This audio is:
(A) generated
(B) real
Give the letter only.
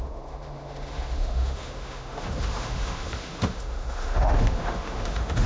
A